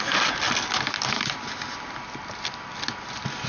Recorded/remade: recorded